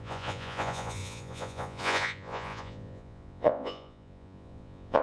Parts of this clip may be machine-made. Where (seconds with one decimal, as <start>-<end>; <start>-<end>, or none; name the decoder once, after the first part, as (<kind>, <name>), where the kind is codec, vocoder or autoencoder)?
0.0-5.0 (vocoder, Vocos)